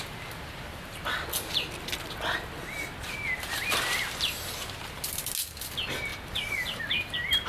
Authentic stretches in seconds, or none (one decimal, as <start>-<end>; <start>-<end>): 0.0-7.5